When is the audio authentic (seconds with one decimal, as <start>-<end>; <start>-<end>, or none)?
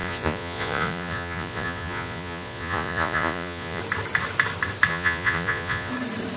3.8-4.9; 5.9-6.4